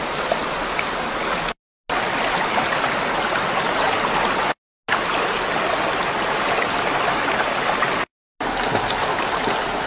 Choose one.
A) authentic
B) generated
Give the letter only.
A